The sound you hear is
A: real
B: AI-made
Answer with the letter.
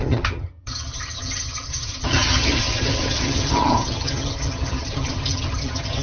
B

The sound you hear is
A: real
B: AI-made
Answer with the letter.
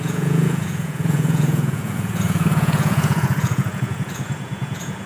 B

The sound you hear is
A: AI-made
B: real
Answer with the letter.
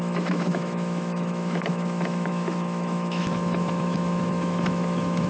A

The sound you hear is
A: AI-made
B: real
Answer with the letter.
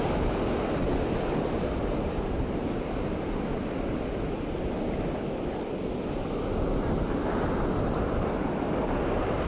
B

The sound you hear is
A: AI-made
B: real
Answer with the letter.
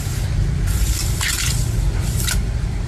B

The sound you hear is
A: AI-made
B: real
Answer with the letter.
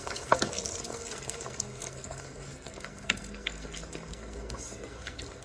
A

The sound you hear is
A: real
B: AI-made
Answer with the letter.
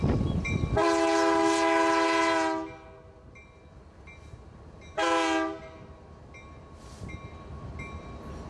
A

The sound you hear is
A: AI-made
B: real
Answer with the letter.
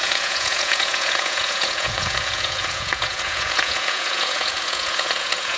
A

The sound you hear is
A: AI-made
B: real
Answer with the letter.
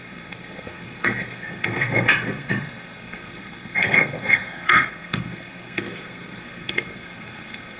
A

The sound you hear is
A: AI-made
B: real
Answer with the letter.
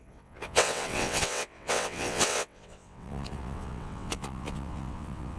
A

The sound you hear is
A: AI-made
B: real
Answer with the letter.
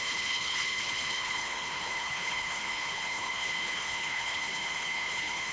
A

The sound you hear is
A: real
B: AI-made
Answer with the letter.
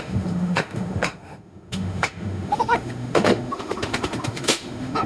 B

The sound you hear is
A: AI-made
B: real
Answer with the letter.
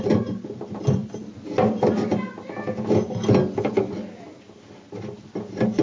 B